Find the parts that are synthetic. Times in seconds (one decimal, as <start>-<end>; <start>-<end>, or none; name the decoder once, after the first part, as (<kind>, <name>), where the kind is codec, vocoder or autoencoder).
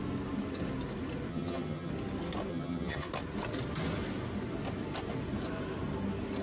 1.3-1.9 (vocoder, HiFi-GAN); 2.5-3.1